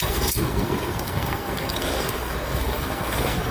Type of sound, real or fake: fake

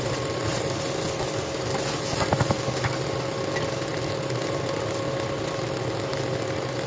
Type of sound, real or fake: real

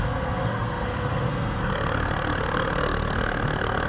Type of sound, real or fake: fake